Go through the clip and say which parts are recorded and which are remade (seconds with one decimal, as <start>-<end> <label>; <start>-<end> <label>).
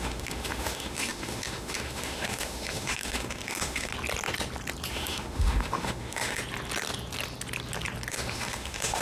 0.0-3.9 remade; 3.9-4.9 recorded; 4.9-6.4 remade; 6.4-8.1 recorded; 8.1-9.0 remade